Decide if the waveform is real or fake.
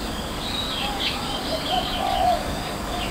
fake